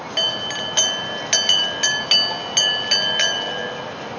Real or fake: real